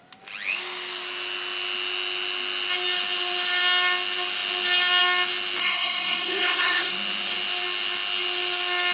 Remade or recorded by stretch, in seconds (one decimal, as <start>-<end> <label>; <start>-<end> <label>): 0.0-5.6 recorded; 5.6-6.9 remade; 6.9-8.9 recorded